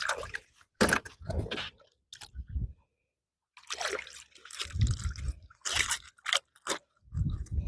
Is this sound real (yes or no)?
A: yes